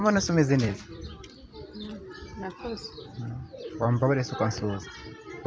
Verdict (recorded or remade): remade